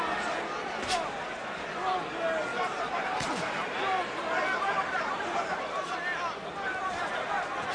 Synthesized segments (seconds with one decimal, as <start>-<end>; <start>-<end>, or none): 2.5-5.8